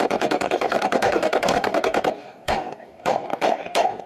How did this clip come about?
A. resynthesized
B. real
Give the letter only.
A